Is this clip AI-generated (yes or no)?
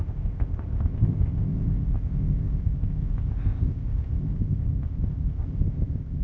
yes